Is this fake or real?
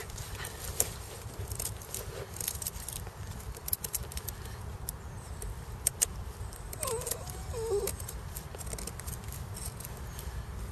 real